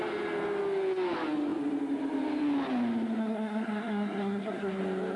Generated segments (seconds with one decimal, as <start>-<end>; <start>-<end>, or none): 3.2-4.8